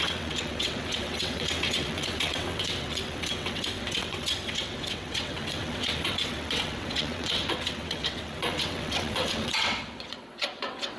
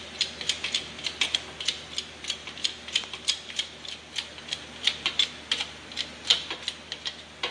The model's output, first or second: first